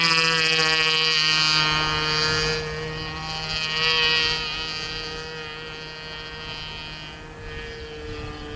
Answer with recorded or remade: recorded